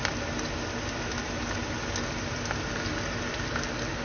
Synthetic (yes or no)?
no